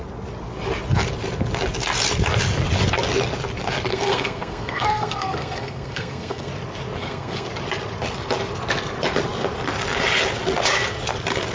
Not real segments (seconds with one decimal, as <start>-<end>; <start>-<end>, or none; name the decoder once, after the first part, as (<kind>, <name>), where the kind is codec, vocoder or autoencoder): 3.9-6.5 (codec, SNAC); 7.0-7.5